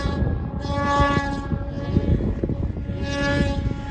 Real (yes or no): yes